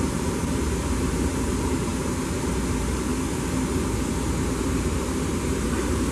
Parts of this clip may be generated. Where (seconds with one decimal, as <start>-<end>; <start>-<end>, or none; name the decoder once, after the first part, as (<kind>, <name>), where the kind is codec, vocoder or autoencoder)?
0.0-3.1 (vocoder, BigVGAN v2); 4.5-6.1